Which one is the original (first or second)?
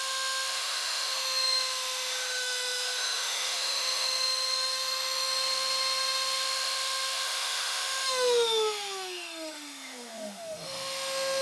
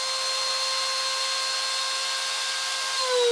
second